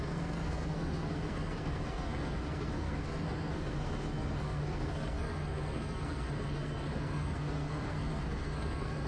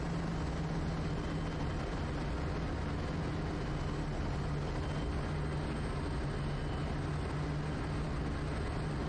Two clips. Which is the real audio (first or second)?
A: second